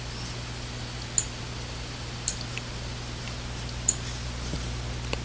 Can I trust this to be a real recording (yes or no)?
yes